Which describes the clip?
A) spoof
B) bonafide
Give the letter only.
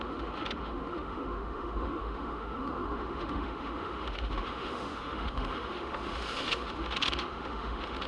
A